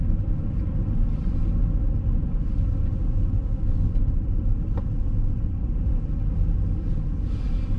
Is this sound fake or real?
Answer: real